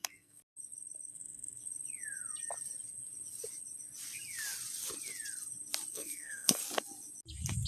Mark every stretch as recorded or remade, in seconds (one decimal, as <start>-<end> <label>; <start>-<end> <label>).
0.0-0.4 remade; 0.4-1.1 recorded; 1.1-1.6 remade; 1.6-5.9 recorded; 5.9-6.6 remade; 6.6-7.7 recorded